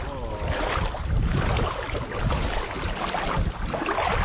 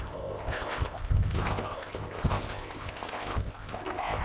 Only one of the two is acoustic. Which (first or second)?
first